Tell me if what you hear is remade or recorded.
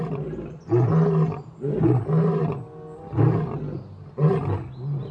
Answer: recorded